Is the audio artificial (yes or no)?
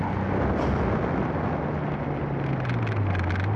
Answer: no